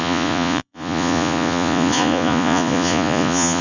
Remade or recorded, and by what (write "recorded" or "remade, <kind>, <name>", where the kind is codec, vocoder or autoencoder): remade, vocoder, Vocos